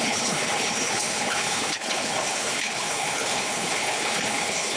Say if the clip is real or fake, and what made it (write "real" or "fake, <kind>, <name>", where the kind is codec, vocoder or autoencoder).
fake, codec, HILCodec